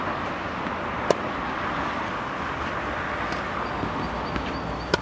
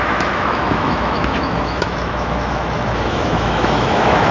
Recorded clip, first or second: first